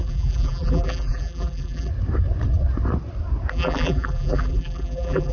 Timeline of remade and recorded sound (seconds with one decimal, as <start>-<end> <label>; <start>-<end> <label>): 0.0-1.9 remade; 1.9-3.5 recorded; 3.5-5.3 remade